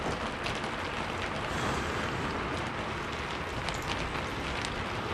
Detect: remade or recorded recorded